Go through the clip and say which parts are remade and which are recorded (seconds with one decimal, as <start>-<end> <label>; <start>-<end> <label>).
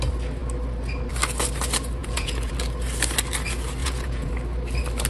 0.0-2.0 recorded; 2.0-2.5 remade; 2.5-3.8 recorded; 3.8-4.3 remade; 4.3-5.1 recorded